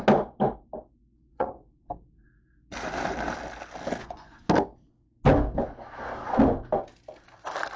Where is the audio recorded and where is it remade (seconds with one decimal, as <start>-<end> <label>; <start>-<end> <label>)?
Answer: 0.0-1.3 recorded; 1.3-1.9 remade; 1.9-4.0 recorded; 4.0-4.5 remade; 4.5-7.8 recorded